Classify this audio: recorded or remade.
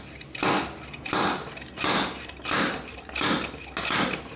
recorded